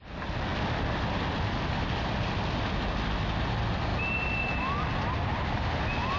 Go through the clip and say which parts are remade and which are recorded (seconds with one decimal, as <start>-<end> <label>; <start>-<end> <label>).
0.0-6.2 recorded